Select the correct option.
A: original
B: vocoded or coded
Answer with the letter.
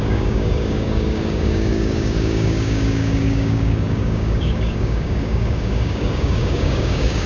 B